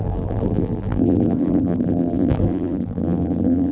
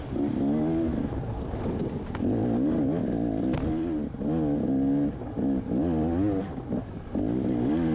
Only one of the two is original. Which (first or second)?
second